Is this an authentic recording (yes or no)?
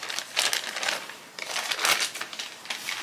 yes